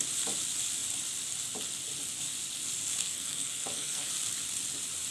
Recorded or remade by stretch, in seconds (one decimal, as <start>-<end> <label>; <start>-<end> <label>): 0.0-3.0 recorded; 3.0-4.1 remade; 4.1-5.1 recorded